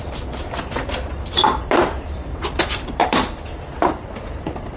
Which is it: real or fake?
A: fake